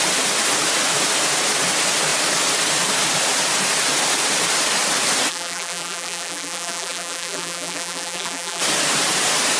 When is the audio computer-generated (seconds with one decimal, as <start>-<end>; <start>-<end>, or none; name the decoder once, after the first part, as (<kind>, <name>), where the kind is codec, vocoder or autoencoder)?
5.3-8.6 (vocoder, BigVGAN v2)